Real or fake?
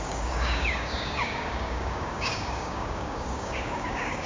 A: fake